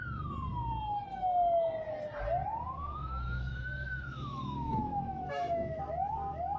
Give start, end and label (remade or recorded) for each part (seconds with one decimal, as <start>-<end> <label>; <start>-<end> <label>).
0.0-2.8 recorded; 2.8-5.8 remade; 5.8-6.6 recorded